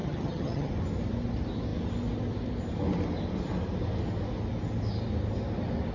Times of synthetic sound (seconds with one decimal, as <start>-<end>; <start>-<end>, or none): 0.0-0.7